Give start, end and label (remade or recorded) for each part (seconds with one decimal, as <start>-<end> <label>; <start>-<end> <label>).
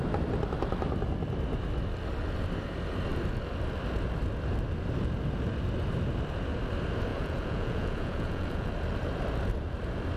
0.0-7.1 recorded; 7.1-8.7 remade; 8.7-10.2 recorded